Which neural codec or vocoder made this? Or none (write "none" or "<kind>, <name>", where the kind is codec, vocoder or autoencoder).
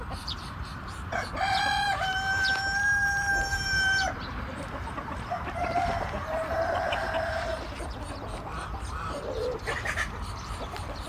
vocoder, BigVGAN v2